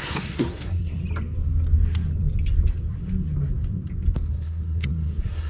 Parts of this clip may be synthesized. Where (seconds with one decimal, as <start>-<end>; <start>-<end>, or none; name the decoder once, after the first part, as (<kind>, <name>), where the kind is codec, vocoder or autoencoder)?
0.0-1.0 (codec, SNAC); 4.3-5.5